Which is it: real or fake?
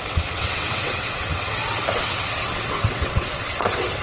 fake